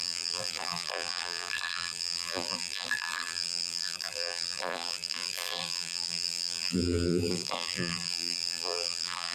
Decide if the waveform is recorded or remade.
remade